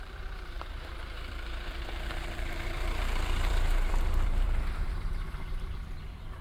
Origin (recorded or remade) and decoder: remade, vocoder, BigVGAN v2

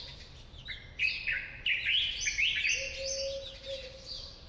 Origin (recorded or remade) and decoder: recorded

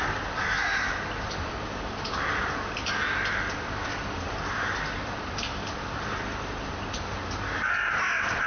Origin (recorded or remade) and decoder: recorded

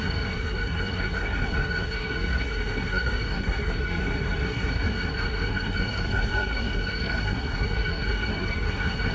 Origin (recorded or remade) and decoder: remade, codec, SNAC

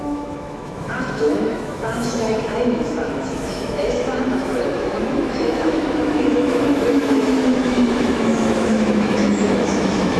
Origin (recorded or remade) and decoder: remade, autoencoder, DAC-VAE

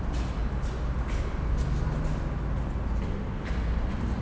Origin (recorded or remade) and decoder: recorded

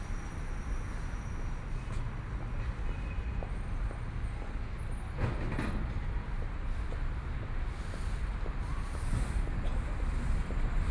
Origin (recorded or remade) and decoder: recorded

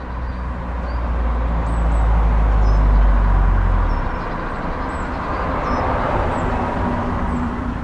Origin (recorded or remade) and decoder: recorded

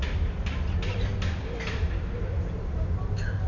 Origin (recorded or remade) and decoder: recorded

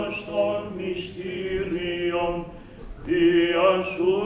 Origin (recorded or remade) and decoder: recorded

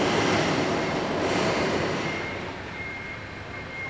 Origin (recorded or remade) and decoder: remade, vocoder, BigVGAN v2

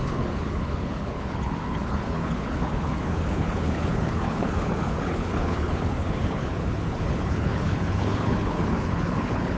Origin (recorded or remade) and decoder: remade, codec, HILCodec